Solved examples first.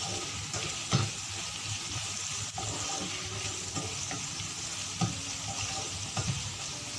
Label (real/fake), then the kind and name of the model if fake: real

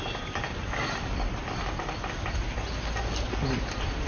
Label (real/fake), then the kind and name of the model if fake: real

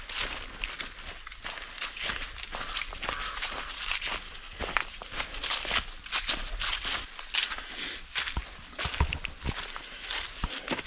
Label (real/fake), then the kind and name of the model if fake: real